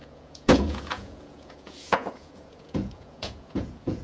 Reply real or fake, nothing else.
fake